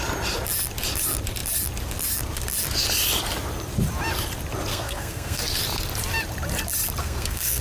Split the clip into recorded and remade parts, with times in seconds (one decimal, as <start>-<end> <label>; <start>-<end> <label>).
0.0-4.7 recorded; 4.7-5.4 remade; 5.4-7.0 recorded; 7.0-7.6 remade